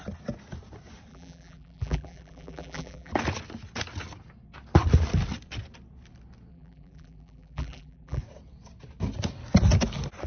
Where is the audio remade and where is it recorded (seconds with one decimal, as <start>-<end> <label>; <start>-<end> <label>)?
0.0-1.1 recorded; 1.1-3.1 remade; 3.1-6.5 recorded; 6.5-8.2 remade; 8.2-10.3 recorded